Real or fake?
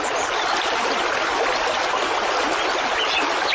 real